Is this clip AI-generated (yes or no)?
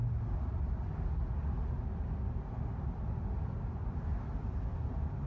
no